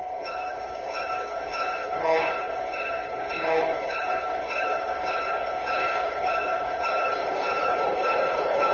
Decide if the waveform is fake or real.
fake